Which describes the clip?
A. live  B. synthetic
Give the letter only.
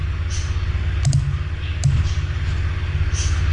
A